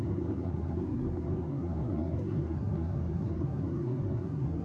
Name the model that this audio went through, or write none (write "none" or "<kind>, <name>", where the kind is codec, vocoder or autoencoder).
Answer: codec, SNAC